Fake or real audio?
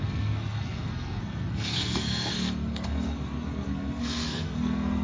fake